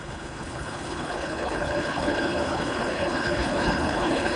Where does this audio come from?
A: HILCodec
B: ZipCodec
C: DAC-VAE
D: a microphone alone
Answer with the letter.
A